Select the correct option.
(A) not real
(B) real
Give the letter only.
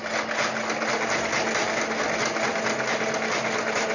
B